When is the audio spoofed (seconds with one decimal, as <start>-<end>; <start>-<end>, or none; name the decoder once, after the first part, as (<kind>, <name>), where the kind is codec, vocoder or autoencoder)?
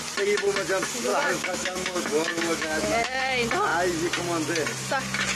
1.1-3.2 (autoencoder, DAC-VAE)